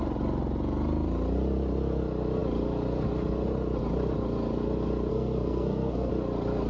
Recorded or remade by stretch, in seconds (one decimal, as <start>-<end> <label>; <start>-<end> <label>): 0.0-5.1 recorded; 5.1-6.1 remade; 6.1-6.7 recorded